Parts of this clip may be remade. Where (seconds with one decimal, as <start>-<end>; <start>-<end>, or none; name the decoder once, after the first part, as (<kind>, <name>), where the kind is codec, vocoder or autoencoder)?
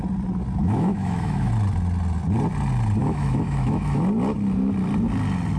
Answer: 0.6-1.5 (autoencoder, DAC-VAE); 3.0-4.0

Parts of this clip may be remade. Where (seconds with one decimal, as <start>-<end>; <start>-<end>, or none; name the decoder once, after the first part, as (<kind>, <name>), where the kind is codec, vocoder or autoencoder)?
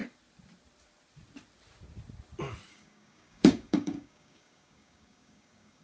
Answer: 2.7-5.8 (codec, DAC)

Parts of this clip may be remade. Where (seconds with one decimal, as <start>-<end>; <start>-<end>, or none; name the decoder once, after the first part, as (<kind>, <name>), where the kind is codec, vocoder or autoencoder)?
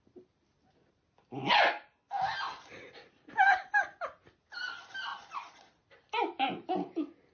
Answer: 5.1-5.8 (vocoder, Vocos)